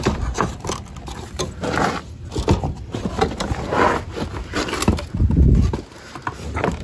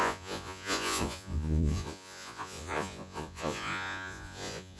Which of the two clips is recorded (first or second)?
first